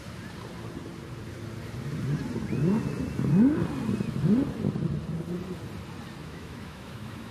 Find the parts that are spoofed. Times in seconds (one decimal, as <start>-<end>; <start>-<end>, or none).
6.2-7.3